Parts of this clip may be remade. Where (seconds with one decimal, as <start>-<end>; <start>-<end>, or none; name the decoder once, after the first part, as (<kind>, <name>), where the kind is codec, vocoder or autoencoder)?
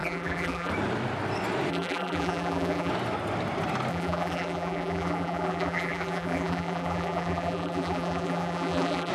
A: 0.0-0.7 (vocoder, BigVGAN v2); 1.7-2.9; 3.9-9.1